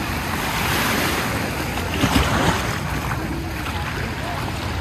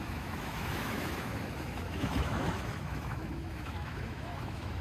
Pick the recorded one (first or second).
first